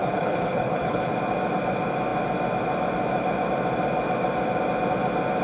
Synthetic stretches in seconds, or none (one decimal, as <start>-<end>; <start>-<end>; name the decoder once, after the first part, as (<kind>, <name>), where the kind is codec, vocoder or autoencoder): 0.0-1.1 (codec, HILCodec)